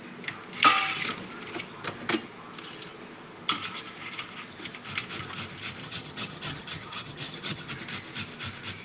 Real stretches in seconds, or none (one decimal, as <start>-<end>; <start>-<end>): 0.0-5.8; 7.7-8.8